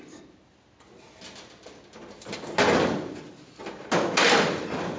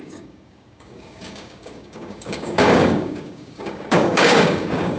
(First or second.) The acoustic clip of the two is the first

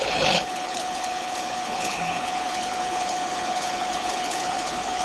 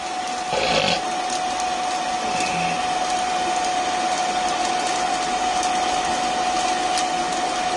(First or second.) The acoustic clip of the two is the second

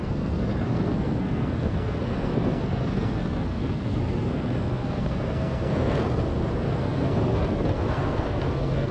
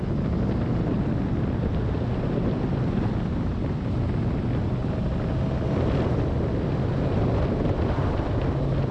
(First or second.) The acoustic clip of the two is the second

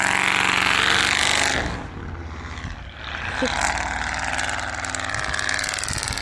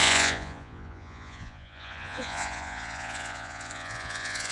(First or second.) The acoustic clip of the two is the first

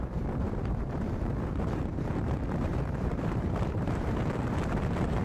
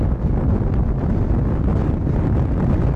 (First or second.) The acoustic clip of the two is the second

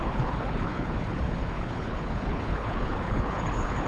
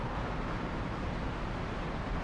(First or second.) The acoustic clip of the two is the second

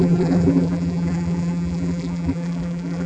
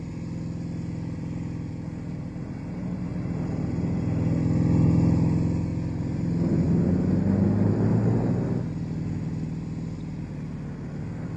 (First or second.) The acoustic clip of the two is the second